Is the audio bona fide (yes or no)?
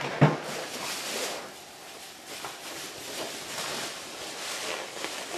yes